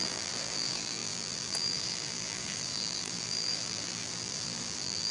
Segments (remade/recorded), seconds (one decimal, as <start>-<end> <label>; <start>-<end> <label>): 0.0-5.1 remade

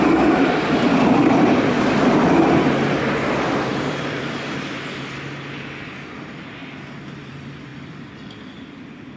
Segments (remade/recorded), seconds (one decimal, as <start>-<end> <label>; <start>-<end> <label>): 0.0-3.7 recorded; 3.7-5.1 remade; 5.1-7.7 recorded; 7.7-8.4 remade; 8.4-9.2 recorded

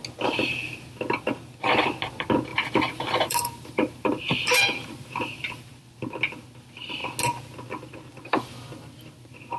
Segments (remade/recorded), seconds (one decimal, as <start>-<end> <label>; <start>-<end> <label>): 0.0-2.5 recorded; 2.5-5.6 remade; 5.6-9.6 recorded

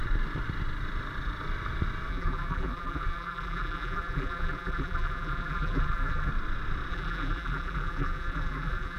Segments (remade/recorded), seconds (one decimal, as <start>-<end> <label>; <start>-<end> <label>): 0.0-2.1 recorded; 2.1-6.3 remade; 6.3-6.9 recorded; 6.9-9.0 remade

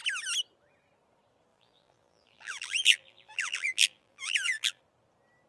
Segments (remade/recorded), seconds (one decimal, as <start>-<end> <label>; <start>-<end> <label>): 0.0-1.5 recorded; 1.5-4.8 remade; 4.8-5.5 recorded

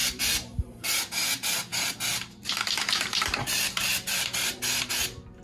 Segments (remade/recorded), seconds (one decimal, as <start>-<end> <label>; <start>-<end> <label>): 0.0-1.0 remade; 1.0-1.7 recorded; 1.7-4.9 remade; 4.9-5.4 recorded

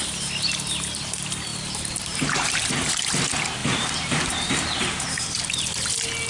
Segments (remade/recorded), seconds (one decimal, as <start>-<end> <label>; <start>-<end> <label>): 0.0-1.5 recorded; 1.5-3.1 remade; 3.1-3.6 recorded; 3.6-5.4 remade; 5.4-6.3 recorded

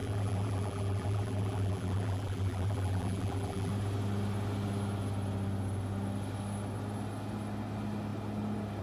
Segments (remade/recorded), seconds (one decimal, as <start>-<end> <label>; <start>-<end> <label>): 0.0-3.7 remade; 3.7-8.8 recorded